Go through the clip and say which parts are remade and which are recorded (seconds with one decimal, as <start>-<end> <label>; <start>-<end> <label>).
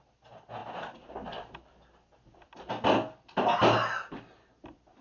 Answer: 0.0-5.0 recorded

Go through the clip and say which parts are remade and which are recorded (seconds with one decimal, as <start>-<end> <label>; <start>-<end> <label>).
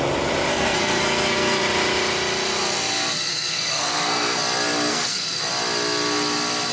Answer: 0.0-0.5 recorded; 0.5-1.6 remade; 1.6-3.3 recorded; 3.3-4.4 remade; 4.4-4.9 recorded; 4.9-5.4 remade; 5.4-6.7 recorded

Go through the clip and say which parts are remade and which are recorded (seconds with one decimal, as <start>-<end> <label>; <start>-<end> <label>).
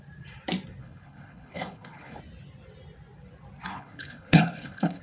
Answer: 0.0-0.8 recorded; 0.8-2.2 remade; 2.2-3.7 recorded; 3.7-5.0 remade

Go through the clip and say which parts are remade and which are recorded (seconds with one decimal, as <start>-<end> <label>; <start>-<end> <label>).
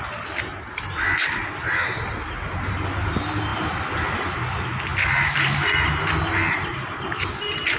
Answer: 0.0-7.8 recorded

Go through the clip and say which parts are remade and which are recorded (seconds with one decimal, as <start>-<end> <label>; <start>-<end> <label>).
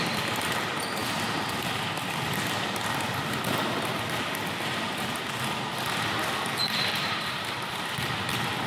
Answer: 0.0-6.9 recorded; 6.9-7.7 remade; 7.7-8.7 recorded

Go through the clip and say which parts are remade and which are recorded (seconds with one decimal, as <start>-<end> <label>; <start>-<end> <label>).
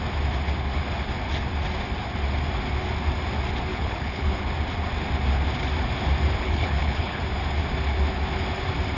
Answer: 0.0-3.7 recorded; 3.7-4.4 remade; 4.4-6.4 recorded; 6.4-7.2 remade; 7.2-9.0 recorded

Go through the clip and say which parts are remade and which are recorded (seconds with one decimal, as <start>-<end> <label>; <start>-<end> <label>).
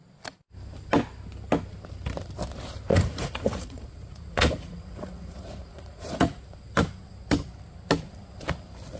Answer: 0.0-2.9 recorded; 2.9-6.4 remade; 6.4-9.0 recorded